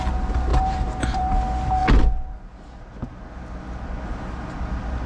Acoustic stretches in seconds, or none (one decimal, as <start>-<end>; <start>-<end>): 0.0-0.5; 1.3-5.1